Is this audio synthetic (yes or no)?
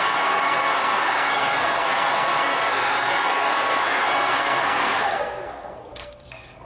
yes